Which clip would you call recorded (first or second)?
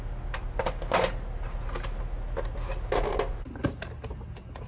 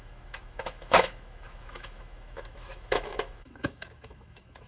first